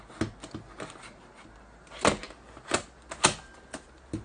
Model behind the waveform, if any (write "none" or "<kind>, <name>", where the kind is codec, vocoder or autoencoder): none